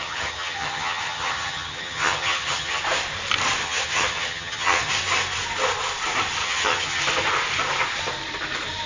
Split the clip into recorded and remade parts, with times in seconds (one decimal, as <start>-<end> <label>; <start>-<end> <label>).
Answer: 0.0-2.8 remade; 2.8-3.6 recorded; 3.6-4.9 remade; 4.9-6.4 recorded; 6.4-7.0 remade; 7.0-8.9 recorded